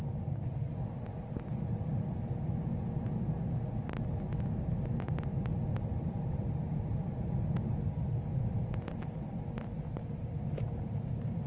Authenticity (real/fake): real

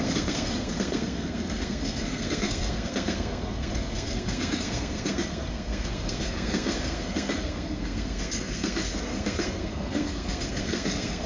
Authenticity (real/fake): fake